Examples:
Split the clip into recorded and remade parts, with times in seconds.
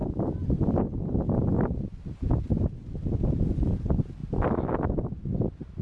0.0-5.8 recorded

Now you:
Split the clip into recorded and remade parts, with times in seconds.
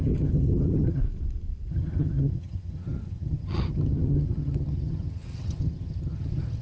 0.0-1.0 remade; 1.0-1.7 recorded; 1.7-6.6 remade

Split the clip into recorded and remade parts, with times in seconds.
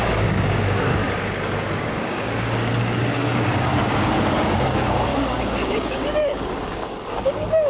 0.0-1.0 remade; 1.0-1.8 recorded; 1.8-7.7 remade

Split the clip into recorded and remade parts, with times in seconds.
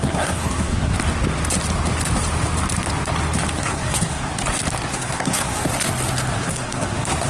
0.0-0.9 remade; 0.9-3.6 recorded; 3.6-4.3 remade; 4.3-4.9 recorded; 4.9-5.6 remade; 5.6-6.4 recorded; 6.4-7.3 remade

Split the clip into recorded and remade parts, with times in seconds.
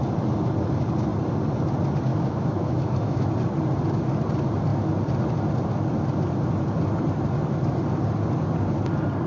0.0-2.1 recorded; 2.1-3.3 remade; 3.3-9.3 recorded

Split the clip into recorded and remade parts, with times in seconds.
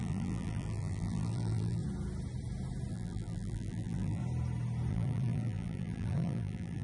0.0-1.8 remade; 1.8-2.9 recorded; 2.9-4.2 remade; 4.2-4.9 recorded; 4.9-6.8 remade